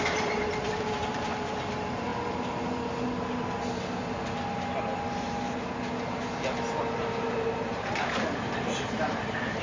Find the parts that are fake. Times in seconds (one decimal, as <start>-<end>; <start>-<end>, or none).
0.0-2.1; 6.8-9.6